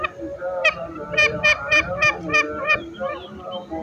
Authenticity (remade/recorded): recorded